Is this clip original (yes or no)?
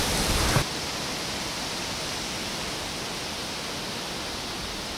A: yes